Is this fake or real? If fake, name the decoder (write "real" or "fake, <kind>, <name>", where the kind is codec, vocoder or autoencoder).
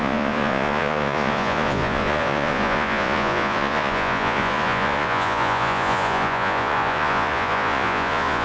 fake, vocoder, Vocos